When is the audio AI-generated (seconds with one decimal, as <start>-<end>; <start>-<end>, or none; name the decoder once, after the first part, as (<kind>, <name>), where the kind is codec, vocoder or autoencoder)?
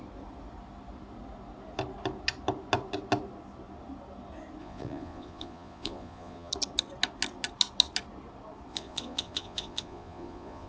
4.6-6.5 (vocoder, Vocos); 8.7-10.7